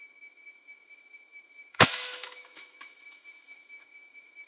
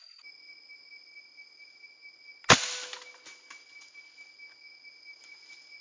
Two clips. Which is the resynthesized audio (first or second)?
first